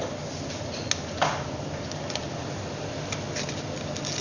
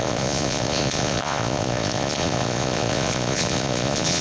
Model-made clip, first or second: second